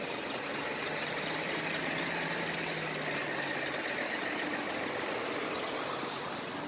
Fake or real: real